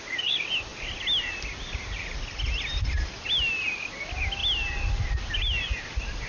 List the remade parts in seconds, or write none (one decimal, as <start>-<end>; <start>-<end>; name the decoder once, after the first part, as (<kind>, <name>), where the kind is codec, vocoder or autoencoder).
none